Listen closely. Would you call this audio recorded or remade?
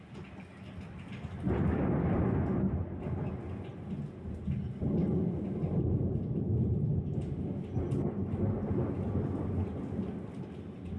recorded